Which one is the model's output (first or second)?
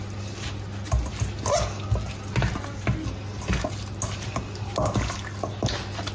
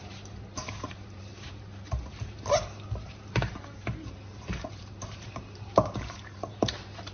second